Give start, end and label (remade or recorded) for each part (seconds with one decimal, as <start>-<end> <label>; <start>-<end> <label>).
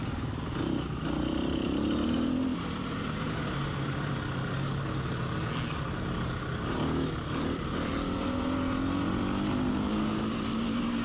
0.0-11.0 recorded